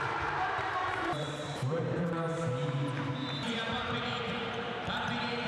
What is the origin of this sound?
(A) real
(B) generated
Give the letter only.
B